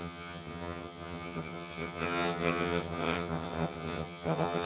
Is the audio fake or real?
fake